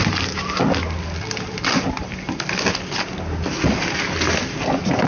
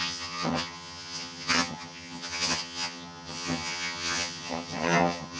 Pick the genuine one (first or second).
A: first